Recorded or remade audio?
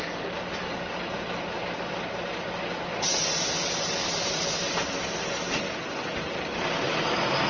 recorded